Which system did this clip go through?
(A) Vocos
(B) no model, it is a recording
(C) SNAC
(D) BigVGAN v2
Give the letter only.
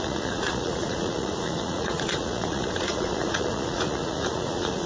A